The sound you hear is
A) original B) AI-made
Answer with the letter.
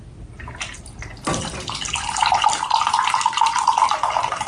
A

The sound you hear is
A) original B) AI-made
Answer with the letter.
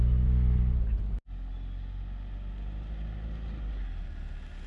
A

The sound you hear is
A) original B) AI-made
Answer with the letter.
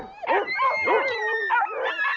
A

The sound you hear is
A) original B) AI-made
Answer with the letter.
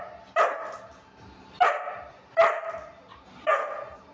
A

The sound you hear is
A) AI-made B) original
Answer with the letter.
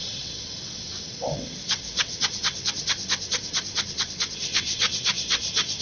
A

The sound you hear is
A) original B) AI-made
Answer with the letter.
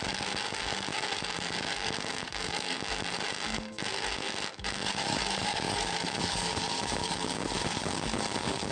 B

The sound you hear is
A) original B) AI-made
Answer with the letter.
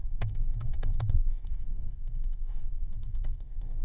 B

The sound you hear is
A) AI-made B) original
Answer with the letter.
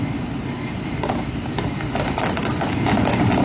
B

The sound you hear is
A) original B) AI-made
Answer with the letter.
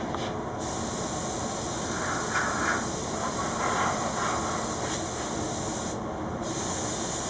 A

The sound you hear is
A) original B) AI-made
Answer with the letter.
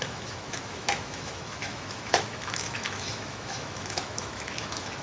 B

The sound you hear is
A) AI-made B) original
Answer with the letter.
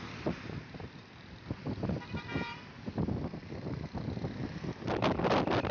B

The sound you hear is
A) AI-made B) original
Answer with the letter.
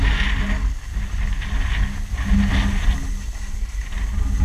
B